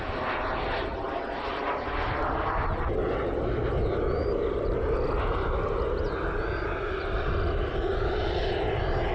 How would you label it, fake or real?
real